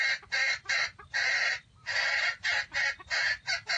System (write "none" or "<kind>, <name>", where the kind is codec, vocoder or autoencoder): none